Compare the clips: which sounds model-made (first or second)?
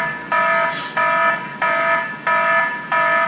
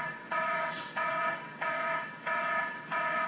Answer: second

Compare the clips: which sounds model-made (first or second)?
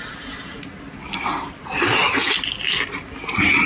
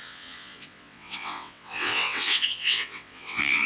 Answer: second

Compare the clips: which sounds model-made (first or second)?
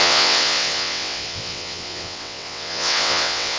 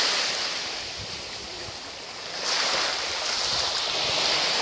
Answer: first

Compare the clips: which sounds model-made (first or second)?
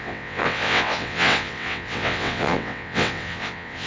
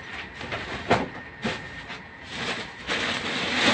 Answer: first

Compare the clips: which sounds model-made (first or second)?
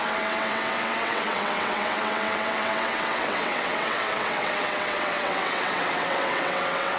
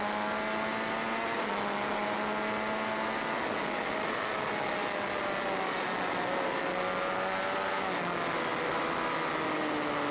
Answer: first